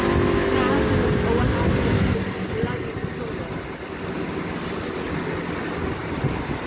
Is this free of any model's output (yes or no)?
yes